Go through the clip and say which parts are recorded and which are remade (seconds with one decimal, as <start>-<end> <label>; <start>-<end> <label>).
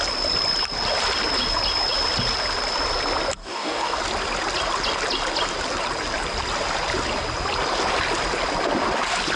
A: 0.0-3.4 recorded; 3.4-4.0 remade; 4.0-9.4 recorded